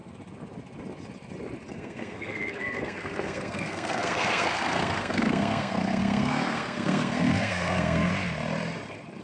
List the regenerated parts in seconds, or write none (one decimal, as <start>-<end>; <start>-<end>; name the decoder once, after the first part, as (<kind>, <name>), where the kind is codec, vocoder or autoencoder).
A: 1.7-8.1 (codec, SNAC)